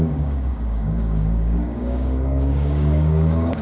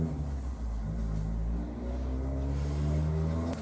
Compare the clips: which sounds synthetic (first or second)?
first